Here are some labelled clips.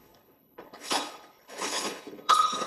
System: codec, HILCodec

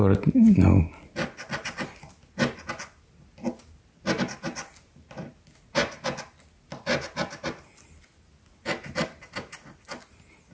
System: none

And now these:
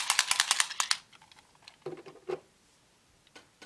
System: none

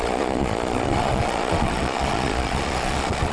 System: vocoder, Vocos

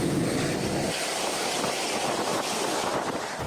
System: vocoder, BigVGAN v2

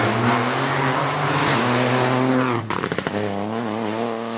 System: none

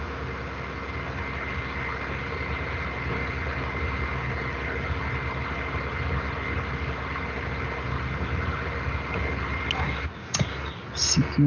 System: none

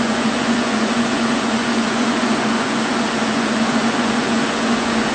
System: vocoder, Vocos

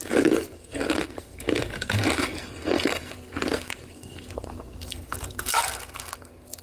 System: codec, SNAC